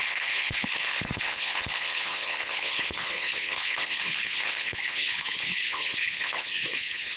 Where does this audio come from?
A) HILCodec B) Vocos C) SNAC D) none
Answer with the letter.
A